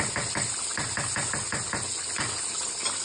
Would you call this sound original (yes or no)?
yes